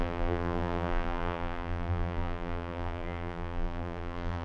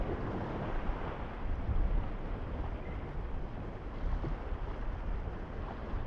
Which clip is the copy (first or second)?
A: first